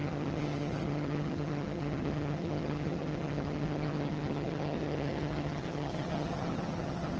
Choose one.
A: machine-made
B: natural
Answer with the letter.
A